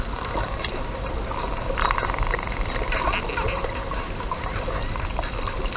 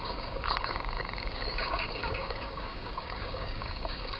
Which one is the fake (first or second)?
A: second